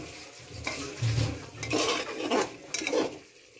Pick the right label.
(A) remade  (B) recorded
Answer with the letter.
B